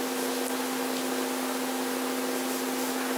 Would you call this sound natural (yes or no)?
yes